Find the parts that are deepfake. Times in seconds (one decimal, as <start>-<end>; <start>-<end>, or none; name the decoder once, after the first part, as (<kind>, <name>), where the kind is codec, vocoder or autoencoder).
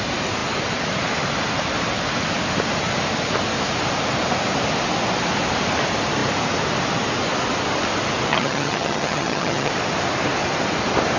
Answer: 8.3-9.7 (vocoder, HiFi-GAN)